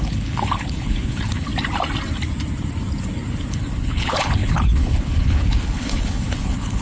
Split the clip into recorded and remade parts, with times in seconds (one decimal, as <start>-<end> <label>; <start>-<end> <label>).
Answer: 0.0-1.5 remade; 1.5-3.5 recorded; 3.5-6.8 remade

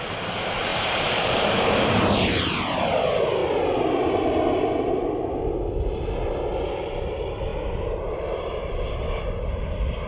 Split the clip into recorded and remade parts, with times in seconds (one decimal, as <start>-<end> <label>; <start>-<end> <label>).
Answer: 0.0-10.1 recorded

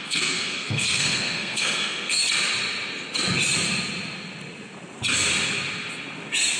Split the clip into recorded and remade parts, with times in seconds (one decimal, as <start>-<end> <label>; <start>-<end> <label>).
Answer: 0.0-2.2 remade; 2.2-6.6 recorded

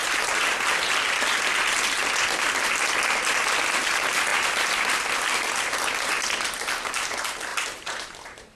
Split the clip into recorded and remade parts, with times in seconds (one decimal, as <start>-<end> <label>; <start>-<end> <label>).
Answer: 0.0-0.6 remade; 0.6-7.5 recorded; 7.5-8.6 remade

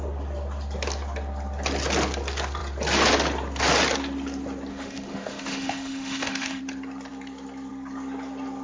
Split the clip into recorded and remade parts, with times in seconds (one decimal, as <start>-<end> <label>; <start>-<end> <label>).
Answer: 0.0-4.7 recorded; 4.7-6.6 remade; 6.6-8.6 recorded